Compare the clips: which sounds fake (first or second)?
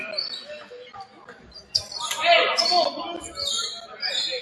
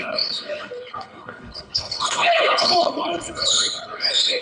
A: second